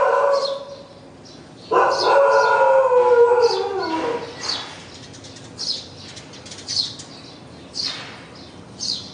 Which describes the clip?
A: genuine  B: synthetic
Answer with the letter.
A